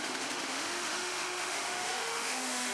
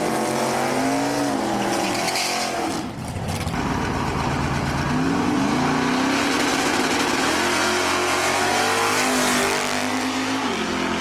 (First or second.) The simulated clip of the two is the first